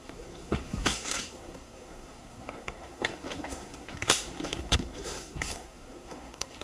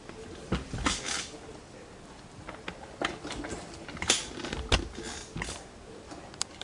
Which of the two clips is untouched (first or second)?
second